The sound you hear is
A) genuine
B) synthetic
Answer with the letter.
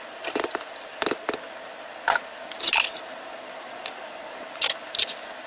A